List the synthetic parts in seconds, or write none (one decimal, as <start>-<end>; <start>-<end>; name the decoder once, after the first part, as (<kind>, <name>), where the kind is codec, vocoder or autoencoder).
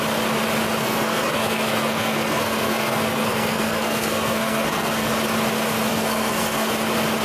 0.8-5.1 (codec, SNAC); 5.9-6.7